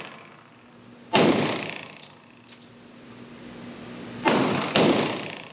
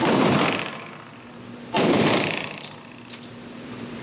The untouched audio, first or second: first